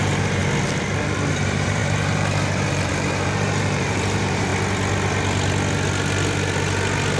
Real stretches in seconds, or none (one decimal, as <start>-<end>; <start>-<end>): 0.4-1.3; 4.5-7.2